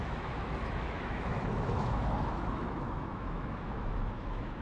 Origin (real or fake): fake